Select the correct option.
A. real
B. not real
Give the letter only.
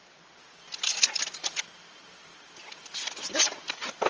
A